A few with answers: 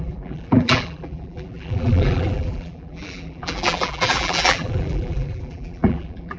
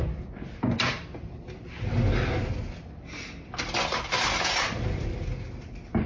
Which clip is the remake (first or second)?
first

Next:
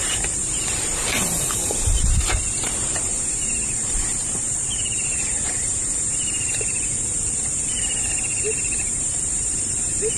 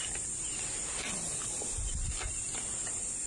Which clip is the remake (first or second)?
first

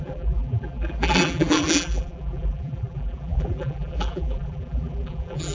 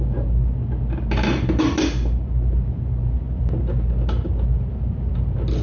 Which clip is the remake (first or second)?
first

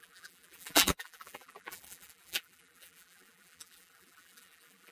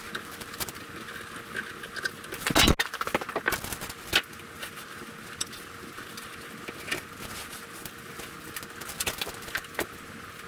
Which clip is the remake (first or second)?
first